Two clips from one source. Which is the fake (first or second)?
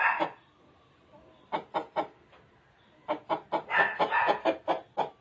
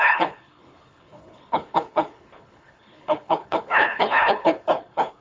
second